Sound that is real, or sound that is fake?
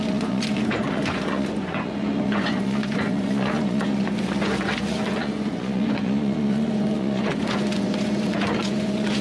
fake